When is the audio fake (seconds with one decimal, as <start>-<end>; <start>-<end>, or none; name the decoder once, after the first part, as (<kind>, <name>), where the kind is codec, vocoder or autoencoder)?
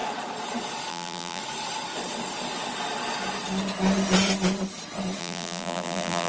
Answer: 0.9-1.4 (vocoder, BigVGAN v2); 5.2-6.3